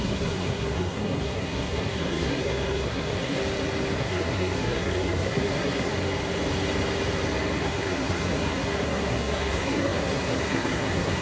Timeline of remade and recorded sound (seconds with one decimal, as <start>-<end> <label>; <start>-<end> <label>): 0.0-3.4 remade; 3.4-4.0 recorded; 4.0-5.9 remade; 5.9-7.6 recorded; 7.6-11.2 remade

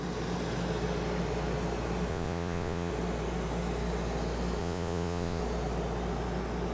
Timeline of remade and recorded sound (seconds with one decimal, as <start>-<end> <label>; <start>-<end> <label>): 0.0-2.1 recorded; 2.1-2.9 remade; 2.9-4.6 recorded; 4.6-5.4 remade; 5.4-6.7 recorded

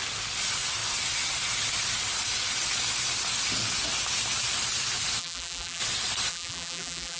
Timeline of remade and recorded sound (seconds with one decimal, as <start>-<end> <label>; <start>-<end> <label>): 0.0-5.2 recorded; 5.2-5.8 remade; 5.8-6.3 recorded; 6.3-7.2 remade

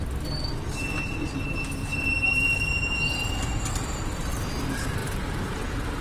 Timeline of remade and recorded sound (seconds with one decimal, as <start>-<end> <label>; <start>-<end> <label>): 0.0-1.8 recorded; 1.8-4.3 remade; 4.3-5.0 recorded; 5.0-6.0 remade

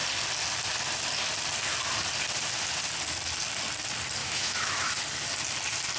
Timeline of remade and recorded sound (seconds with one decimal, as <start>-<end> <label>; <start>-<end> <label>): 0.0-4.2 recorded; 4.2-4.9 remade; 4.9-6.0 recorded

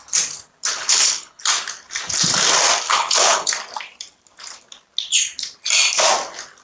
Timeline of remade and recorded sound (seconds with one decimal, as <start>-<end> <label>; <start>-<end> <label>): 0.0-0.7 recorded; 0.7-1.4 remade; 1.4-2.9 recorded; 2.9-3.5 remade; 3.5-6.6 recorded